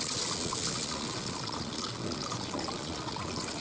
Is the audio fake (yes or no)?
yes